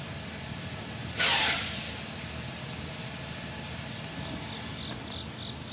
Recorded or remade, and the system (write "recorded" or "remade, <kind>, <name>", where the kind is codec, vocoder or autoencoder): recorded